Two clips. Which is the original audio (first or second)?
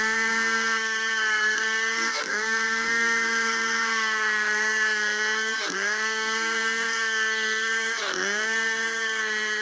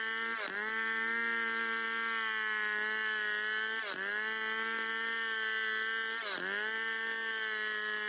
second